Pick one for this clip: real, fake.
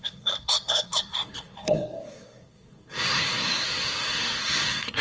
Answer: fake